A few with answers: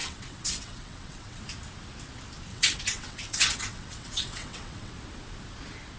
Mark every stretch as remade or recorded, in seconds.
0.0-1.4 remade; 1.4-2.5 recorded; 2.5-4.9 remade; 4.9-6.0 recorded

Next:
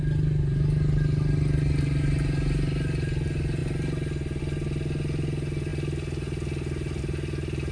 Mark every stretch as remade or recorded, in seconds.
0.0-7.7 recorded

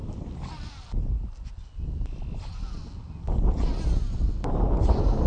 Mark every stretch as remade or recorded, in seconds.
0.0-5.3 recorded